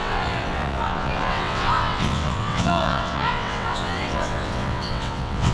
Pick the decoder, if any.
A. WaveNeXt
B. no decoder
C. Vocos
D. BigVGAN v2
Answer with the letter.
A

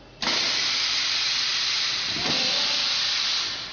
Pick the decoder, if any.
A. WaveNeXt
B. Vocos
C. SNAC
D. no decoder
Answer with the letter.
D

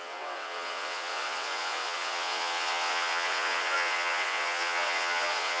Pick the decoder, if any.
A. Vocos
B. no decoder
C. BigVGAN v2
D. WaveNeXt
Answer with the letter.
D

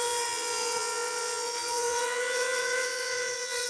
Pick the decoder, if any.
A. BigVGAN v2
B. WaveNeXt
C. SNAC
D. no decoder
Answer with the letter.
B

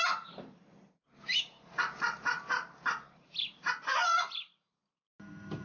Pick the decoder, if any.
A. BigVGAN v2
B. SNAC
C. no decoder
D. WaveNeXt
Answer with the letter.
C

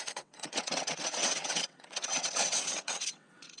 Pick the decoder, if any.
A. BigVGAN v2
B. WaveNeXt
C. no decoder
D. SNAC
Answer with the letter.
B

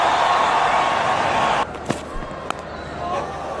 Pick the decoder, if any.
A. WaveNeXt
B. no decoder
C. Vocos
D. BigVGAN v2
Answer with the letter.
B